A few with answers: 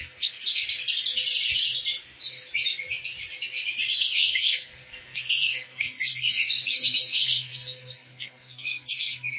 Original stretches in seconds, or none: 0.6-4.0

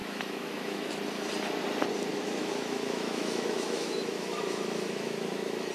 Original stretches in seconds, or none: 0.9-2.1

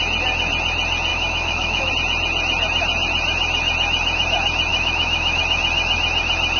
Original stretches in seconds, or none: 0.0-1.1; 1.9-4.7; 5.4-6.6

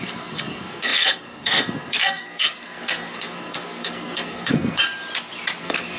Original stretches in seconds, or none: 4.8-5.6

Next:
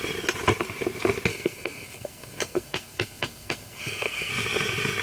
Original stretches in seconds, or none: 0.0-1.3; 4.3-5.0

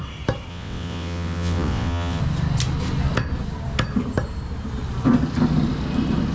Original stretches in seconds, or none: 0.0-0.5; 2.2-6.3